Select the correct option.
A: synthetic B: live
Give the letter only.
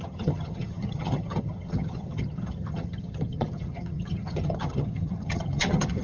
A